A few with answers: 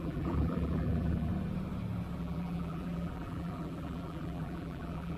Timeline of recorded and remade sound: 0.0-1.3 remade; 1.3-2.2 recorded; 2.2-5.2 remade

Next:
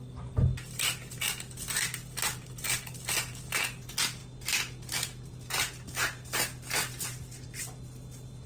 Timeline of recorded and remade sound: 0.0-8.5 recorded

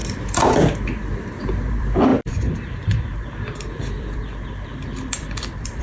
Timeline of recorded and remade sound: 0.0-1.7 recorded; 1.7-5.8 remade

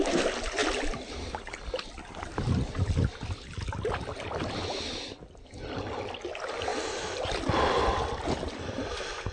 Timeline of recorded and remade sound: 0.0-6.7 recorded; 6.7-9.3 remade

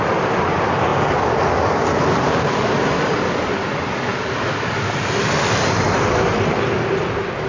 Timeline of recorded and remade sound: 0.0-7.5 recorded